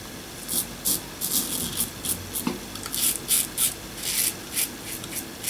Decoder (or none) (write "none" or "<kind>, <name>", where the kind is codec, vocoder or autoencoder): none